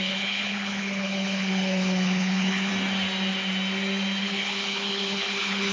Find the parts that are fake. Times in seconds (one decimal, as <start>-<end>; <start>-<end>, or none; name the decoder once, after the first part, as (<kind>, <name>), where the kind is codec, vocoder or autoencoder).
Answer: 0.0-2.7 (codec, HILCodec); 4.2-5.7